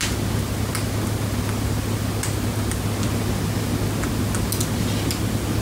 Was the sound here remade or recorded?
recorded